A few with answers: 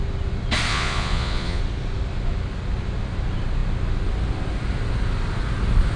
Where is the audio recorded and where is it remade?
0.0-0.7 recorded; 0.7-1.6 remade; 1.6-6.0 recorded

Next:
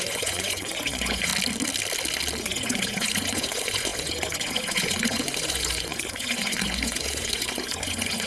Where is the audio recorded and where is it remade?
0.0-1.3 remade; 1.3-2.4 recorded; 2.4-8.3 remade

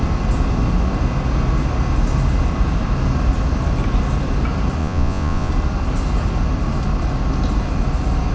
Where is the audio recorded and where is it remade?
0.0-4.8 recorded; 4.8-5.5 remade; 5.5-8.3 recorded

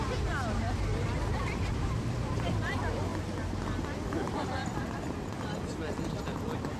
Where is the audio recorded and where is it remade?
0.0-6.8 recorded

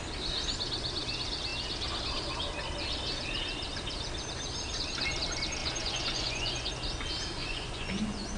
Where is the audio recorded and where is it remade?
0.0-5.6 recorded; 5.6-6.7 remade; 6.7-7.4 recorded; 7.4-8.4 remade

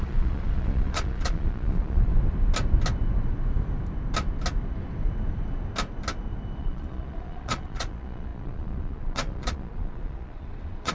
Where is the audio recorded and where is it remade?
0.0-2.1 remade; 2.1-6.6 recorded; 6.6-10.9 remade

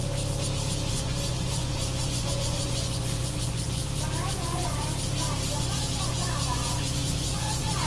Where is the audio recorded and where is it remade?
0.0-0.9 recorded; 0.9-3.8 remade; 3.8-4.3 recorded; 4.3-4.8 remade; 4.8-5.6 recorded; 5.6-7.9 remade